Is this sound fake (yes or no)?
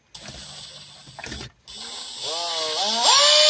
no